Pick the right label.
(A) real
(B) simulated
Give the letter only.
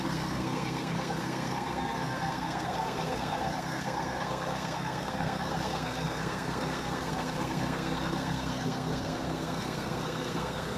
B